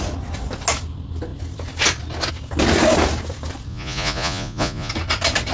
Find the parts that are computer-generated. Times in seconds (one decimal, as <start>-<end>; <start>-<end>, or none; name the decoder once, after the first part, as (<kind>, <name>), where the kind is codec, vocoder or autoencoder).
3.7-4.9 (vocoder, Vocos)